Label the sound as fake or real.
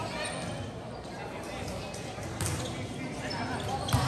real